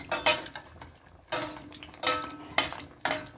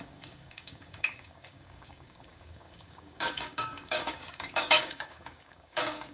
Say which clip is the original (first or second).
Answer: first